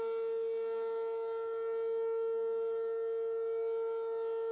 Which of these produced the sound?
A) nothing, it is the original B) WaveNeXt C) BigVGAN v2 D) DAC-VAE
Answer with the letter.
A